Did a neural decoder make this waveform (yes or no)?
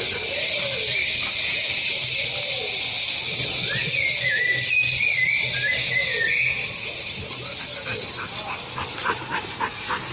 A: no